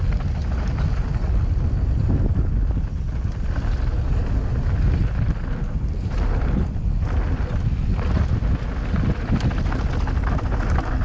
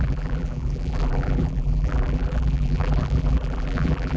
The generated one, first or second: second